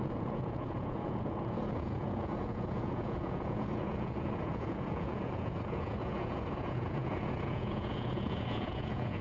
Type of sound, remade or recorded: remade